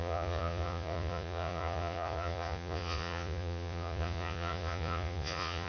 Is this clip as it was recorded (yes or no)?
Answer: no